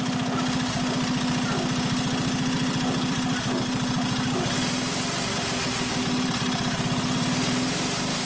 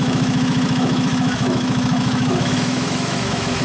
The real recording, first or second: first